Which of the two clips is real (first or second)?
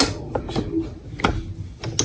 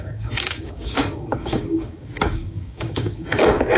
first